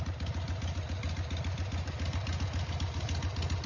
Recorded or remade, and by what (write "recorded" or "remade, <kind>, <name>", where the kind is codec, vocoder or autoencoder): recorded